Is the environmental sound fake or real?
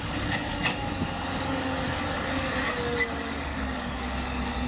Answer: fake